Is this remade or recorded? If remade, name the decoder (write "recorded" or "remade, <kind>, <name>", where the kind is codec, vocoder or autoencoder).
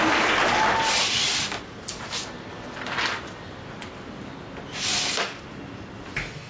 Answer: recorded